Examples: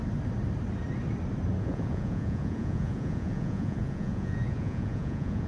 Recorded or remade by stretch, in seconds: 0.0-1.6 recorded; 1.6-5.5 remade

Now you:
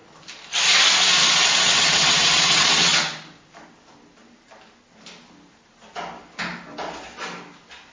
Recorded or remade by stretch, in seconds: 0.0-1.5 recorded; 1.5-2.9 remade; 2.9-7.9 recorded

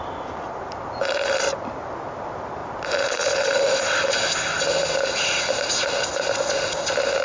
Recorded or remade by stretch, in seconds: 0.0-7.2 recorded

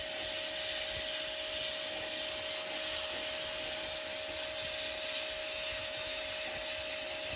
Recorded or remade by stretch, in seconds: 0.0-5.4 recorded; 5.4-6.2 remade; 6.2-7.4 recorded

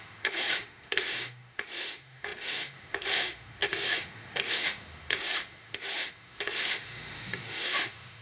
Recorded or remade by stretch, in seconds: 0.0-8.2 remade

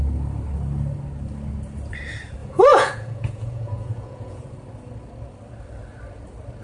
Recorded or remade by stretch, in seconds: 0.0-2.4 recorded; 2.4-4.4 remade; 4.4-6.6 recorded

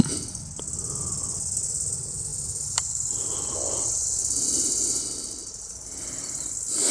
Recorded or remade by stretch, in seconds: 0.0-5.4 recorded; 5.4-6.0 remade; 6.0-6.9 recorded